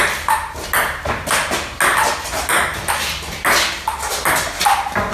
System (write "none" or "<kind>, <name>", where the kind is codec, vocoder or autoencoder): none